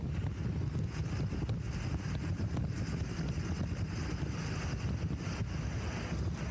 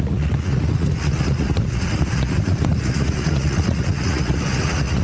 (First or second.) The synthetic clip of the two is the second